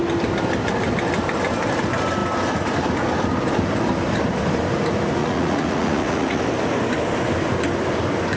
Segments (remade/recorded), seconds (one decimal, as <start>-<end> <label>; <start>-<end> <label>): 0.0-5.2 recorded; 5.2-6.4 remade; 6.4-8.4 recorded